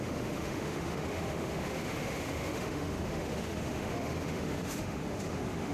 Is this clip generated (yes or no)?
yes